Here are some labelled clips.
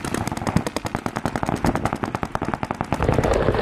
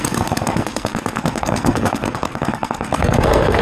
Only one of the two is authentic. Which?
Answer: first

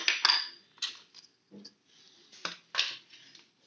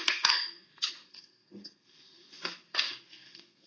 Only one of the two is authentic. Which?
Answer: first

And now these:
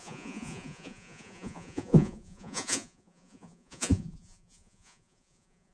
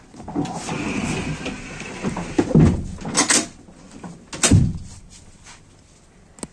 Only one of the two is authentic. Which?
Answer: second